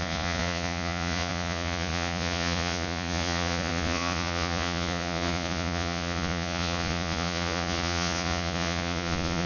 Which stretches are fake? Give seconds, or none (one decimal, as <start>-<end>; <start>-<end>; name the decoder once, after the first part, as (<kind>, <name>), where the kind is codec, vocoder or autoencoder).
0.0-9.5 (vocoder, Vocos)